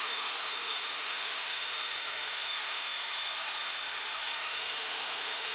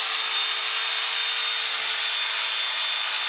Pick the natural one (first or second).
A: second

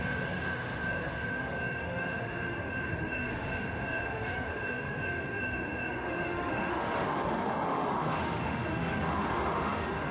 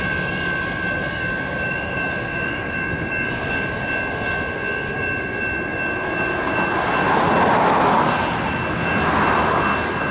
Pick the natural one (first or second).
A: second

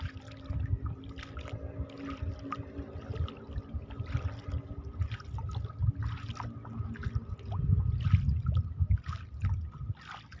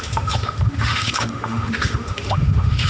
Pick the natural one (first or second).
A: first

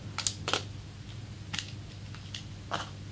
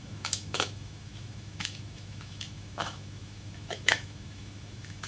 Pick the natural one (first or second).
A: first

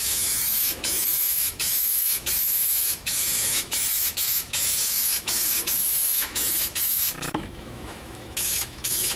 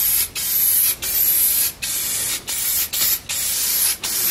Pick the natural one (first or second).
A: second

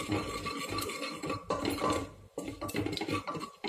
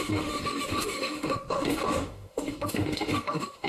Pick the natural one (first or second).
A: first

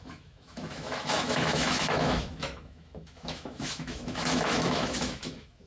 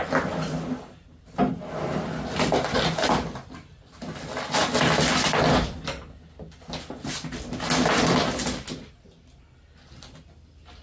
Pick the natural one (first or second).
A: second